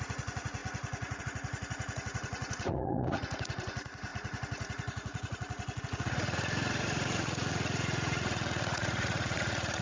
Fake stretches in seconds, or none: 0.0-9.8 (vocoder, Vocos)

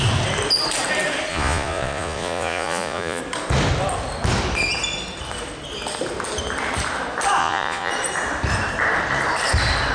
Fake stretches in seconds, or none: 1.3-3.2 (vocoder, Vocos); 7.4-7.9

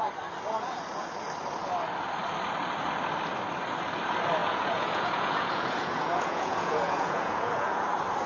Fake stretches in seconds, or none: 4.4-7.8 (vocoder, Vocos)

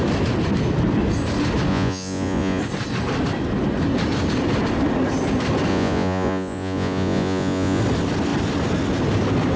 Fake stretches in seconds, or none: 1.7-2.6 (vocoder, Vocos); 5.7-7.8

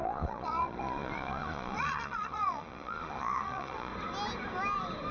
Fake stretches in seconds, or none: 0.0-3.9 (vocoder, Vocos)